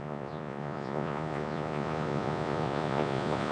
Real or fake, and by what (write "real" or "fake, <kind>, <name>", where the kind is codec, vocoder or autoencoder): fake, vocoder, Vocos